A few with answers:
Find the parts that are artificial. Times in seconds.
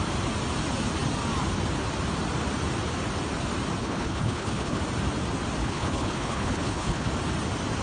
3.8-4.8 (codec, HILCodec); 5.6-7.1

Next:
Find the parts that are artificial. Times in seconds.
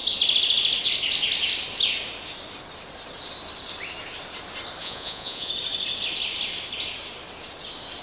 4.8-5.5 (vocoder, Vocos)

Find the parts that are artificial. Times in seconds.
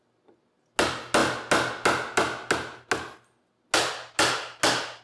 none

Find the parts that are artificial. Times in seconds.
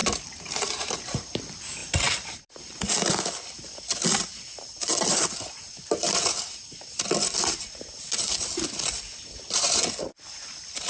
0.0-1.4 (vocoder, BigVGAN v2); 1.8-2.8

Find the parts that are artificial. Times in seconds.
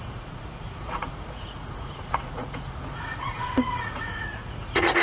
0.0-5.0 (vocoder, Vocos)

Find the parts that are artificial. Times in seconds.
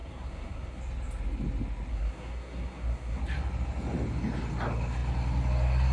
0.0-0.8 (codec, SNAC); 1.9-3.2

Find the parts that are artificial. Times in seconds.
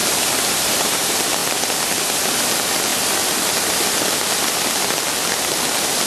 1.4-1.9 (vocoder, BigVGAN v2)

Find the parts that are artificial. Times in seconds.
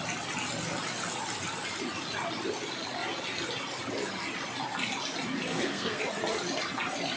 5.5-6.0 (codec, SNAC)